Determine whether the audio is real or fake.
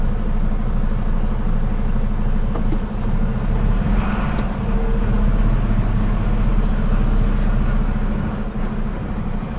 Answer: real